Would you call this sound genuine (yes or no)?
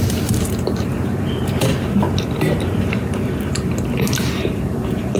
no